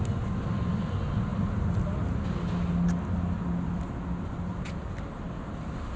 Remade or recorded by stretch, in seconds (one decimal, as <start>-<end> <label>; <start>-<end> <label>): 0.0-6.0 recorded